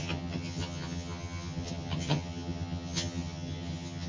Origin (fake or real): fake